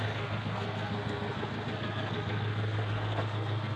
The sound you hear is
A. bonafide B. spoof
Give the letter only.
B